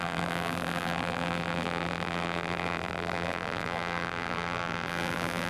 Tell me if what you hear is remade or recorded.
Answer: remade